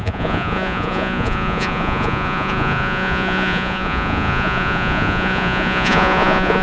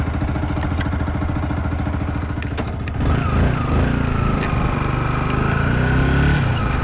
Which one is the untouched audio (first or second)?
second